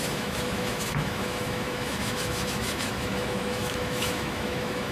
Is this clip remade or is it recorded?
remade